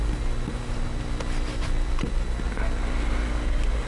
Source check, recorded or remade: recorded